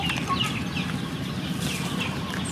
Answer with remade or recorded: recorded